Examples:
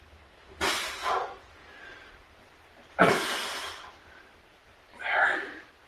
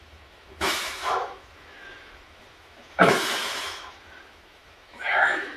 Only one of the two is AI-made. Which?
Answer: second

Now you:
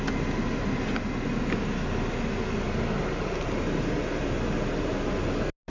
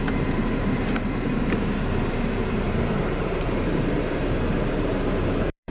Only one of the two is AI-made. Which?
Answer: second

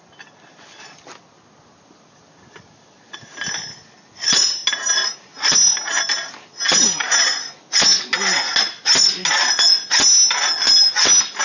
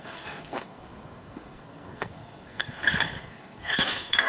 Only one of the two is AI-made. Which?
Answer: second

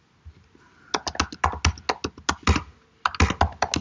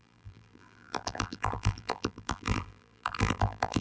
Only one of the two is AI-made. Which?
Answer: second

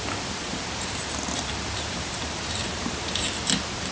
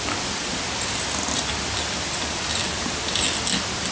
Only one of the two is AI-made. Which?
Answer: first